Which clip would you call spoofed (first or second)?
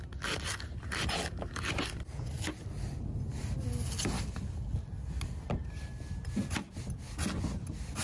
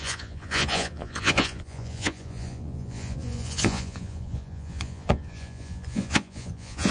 second